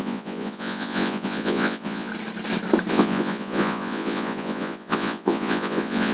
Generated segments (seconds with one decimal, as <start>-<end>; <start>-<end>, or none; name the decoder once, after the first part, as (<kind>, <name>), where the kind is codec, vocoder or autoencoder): 0.0-2.1 (vocoder, Vocos); 2.9-6.1